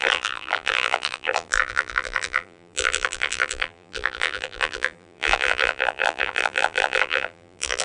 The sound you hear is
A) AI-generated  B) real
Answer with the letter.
A